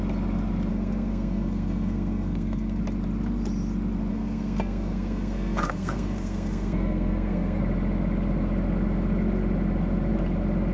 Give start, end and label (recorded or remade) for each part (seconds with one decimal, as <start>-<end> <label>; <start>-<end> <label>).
0.0-0.7 recorded; 0.7-2.8 remade; 2.8-4.1 recorded; 4.1-7.6 remade; 7.6-10.7 recorded